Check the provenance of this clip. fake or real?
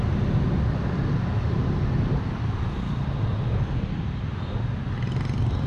real